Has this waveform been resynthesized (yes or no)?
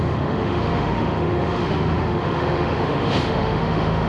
yes